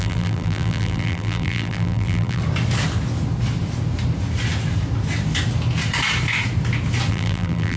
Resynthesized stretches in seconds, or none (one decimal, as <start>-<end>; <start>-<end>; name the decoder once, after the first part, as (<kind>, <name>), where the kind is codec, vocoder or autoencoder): 0.0-2.4 (vocoder, BigVGAN v2); 7.1-7.8